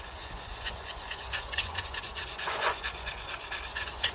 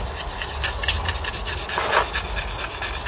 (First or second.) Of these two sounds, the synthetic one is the first